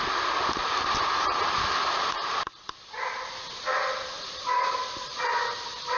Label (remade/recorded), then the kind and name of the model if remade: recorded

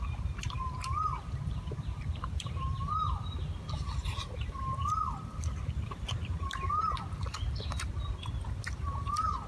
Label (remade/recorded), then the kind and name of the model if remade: remade, vocoder, BigVGAN v2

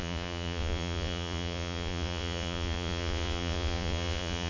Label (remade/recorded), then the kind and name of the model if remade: remade, vocoder, Vocos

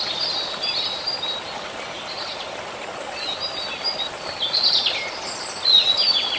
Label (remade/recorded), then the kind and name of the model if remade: recorded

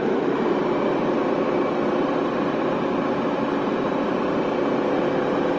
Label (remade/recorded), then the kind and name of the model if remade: recorded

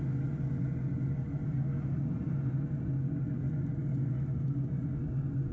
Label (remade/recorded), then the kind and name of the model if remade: recorded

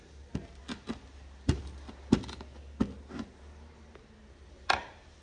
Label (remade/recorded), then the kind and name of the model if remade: recorded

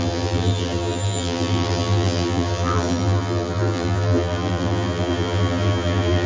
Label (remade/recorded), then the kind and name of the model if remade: remade, vocoder, BigVGAN v2